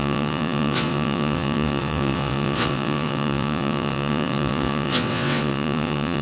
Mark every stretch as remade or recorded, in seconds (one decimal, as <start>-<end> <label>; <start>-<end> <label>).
0.0-6.2 remade